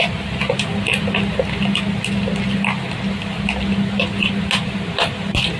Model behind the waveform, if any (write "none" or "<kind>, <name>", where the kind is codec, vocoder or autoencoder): none